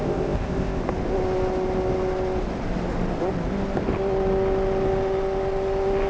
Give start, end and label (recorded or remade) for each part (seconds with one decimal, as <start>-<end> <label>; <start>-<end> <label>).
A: 0.0-0.8 remade; 0.8-6.1 recorded